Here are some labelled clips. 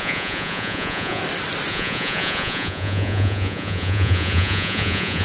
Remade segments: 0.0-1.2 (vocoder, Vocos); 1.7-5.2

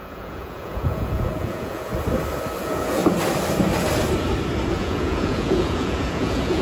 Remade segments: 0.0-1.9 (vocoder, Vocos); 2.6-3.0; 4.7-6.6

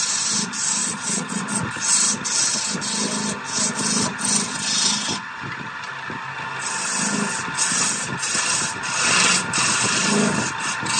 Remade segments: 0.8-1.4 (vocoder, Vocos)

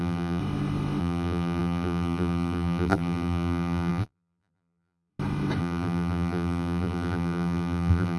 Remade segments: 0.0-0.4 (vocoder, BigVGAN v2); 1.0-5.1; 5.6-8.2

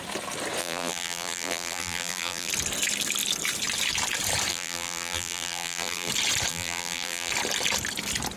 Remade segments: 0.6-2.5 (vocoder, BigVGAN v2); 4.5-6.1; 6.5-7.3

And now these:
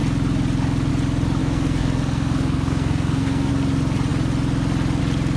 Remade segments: 1.4-3.5 (codec, SNAC)

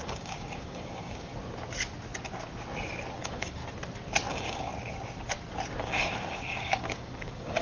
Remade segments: 0.0-1.3 (codec, DAC); 3.1-3.6; 4.3-4.7; 5.8-7.6